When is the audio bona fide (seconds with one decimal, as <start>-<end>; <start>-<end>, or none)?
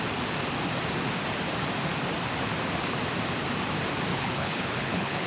0.0-4.1